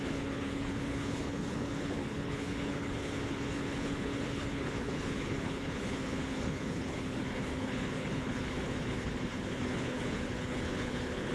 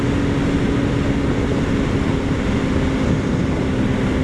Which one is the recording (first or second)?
second